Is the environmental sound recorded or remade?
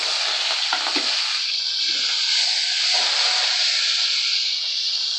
recorded